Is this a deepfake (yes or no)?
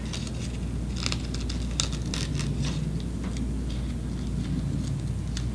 no